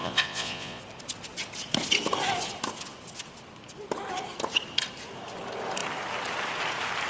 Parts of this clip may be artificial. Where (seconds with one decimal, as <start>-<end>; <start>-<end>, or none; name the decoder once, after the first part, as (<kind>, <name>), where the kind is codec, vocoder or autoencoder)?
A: 0.0-0.8 (vocoder, Vocos)